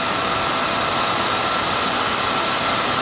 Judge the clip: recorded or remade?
recorded